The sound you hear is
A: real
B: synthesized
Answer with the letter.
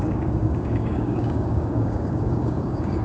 B